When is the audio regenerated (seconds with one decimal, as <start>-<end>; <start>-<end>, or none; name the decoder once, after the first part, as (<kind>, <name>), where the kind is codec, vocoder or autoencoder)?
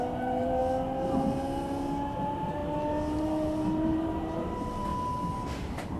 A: 0.0-0.6 (vocoder, BigVGAN v2); 2.2-2.6; 3.2-4.9